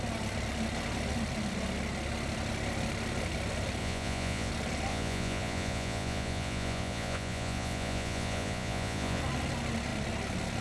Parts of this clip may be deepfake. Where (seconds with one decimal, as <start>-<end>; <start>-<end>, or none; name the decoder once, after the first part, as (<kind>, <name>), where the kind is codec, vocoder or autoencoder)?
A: 3.8-4.5 (vocoder, Vocos); 4.9-9.2